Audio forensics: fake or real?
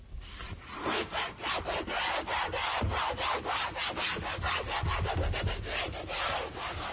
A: real